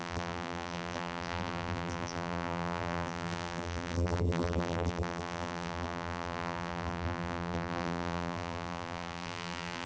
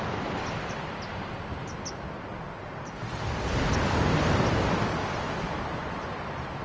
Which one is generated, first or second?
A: first